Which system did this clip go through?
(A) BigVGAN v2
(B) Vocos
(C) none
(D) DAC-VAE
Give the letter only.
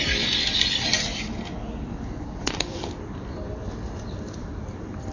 A